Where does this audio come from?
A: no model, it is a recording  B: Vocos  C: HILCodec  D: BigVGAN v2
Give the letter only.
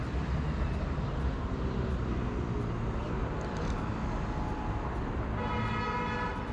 A